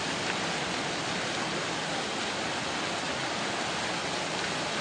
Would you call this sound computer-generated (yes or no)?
no